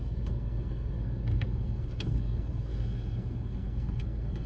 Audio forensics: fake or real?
fake